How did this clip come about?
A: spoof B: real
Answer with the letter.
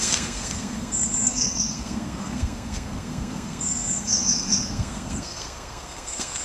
A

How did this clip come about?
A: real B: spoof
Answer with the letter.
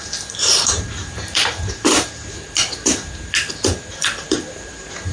B